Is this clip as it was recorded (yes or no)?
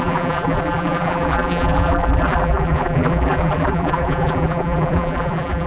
no